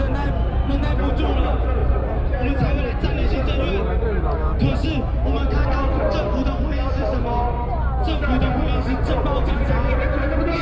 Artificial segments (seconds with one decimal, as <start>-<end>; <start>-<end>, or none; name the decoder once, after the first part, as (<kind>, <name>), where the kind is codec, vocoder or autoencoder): 0.5-1.1 (vocoder, BigVGAN v2); 1.8-3.3